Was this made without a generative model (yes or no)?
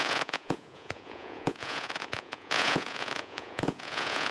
no